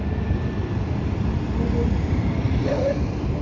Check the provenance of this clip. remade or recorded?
remade